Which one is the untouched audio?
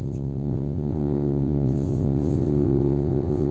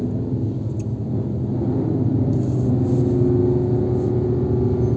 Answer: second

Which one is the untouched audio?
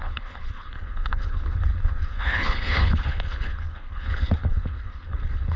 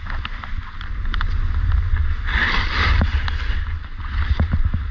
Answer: second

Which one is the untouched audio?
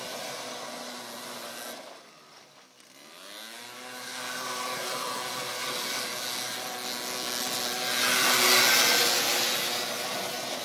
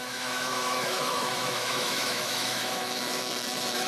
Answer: first